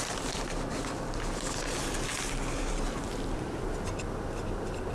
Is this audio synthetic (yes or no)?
no